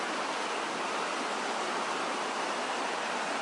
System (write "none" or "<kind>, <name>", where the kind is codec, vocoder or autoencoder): none